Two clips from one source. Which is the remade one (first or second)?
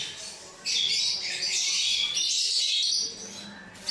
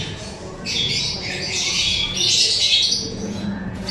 second